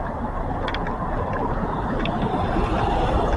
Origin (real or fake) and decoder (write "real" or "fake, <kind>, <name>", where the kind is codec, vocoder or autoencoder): real